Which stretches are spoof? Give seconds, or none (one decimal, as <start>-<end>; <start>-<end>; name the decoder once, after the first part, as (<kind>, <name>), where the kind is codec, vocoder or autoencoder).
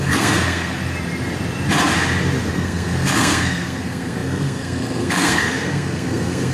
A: 0.0-0.8 (codec, SNAC); 2.5-6.5